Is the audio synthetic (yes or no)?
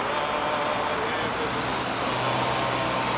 no